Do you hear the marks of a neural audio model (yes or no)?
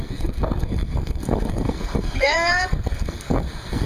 yes